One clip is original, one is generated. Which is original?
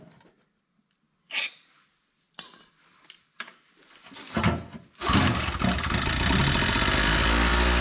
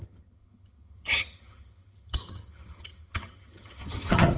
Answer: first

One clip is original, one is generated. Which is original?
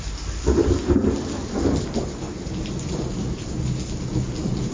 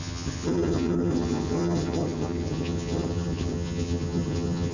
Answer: first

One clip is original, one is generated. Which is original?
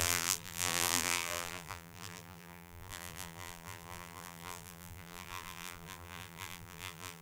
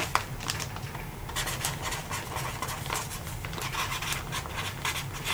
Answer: second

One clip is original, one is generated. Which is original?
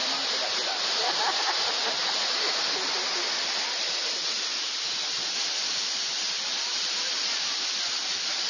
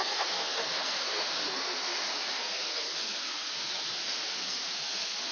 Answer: first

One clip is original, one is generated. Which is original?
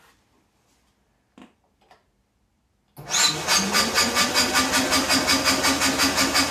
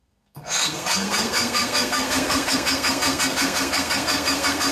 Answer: first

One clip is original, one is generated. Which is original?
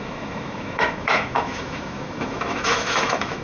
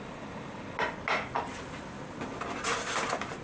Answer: second